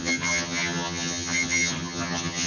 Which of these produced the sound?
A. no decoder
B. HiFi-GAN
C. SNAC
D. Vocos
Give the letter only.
B